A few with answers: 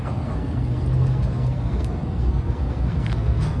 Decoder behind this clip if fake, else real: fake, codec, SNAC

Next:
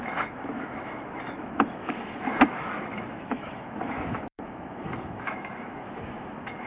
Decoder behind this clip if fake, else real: fake, autoencoder, DAC-VAE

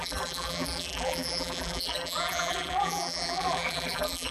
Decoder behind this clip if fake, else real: fake, vocoder, BigVGAN v2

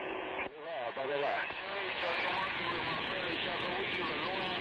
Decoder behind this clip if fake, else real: fake, vocoder, Vocos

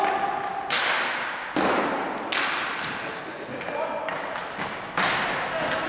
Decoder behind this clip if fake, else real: real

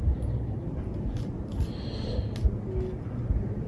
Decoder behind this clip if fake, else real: real